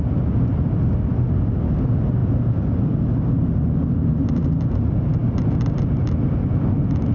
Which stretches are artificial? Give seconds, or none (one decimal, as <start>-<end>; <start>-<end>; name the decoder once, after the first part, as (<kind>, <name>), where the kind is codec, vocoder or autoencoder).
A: none